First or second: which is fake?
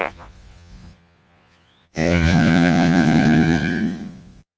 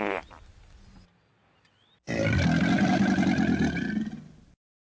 first